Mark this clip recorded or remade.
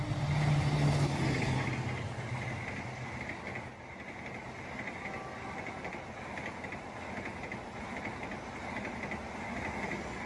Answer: recorded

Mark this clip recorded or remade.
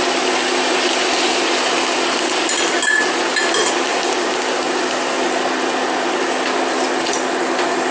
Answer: recorded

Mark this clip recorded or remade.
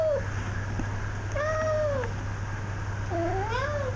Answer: recorded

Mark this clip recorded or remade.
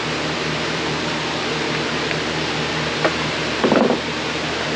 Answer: remade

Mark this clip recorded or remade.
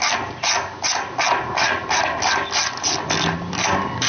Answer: recorded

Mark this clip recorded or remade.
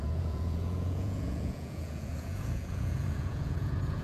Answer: remade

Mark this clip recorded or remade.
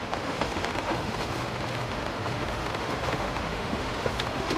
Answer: remade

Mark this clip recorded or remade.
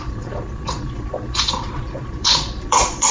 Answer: remade